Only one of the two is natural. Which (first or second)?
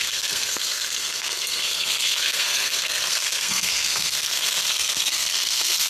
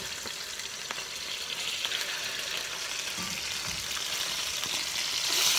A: second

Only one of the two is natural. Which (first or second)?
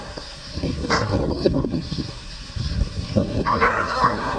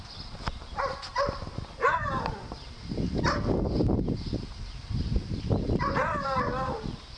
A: second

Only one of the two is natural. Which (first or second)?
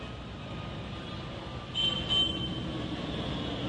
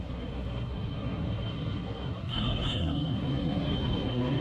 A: first